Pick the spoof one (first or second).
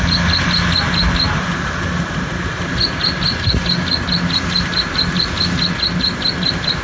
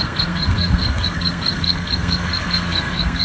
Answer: second